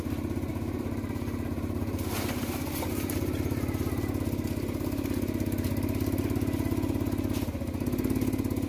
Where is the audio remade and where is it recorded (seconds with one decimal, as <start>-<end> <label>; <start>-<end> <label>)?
0.0-0.5 recorded; 0.5-4.0 remade; 4.0-8.7 recorded